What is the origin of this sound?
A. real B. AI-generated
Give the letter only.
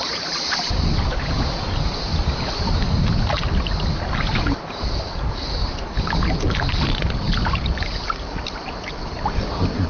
A